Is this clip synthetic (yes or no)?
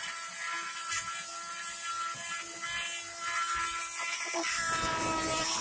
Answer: no